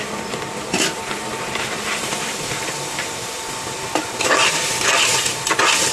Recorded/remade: remade